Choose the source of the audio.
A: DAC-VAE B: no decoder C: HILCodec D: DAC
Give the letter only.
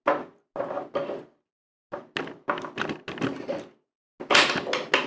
B